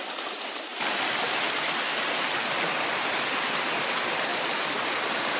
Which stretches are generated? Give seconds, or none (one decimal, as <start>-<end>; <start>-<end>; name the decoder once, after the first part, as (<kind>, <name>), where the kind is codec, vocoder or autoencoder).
none